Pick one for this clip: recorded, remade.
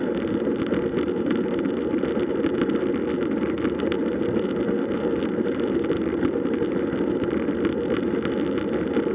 recorded